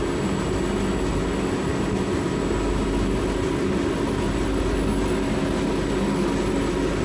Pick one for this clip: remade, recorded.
recorded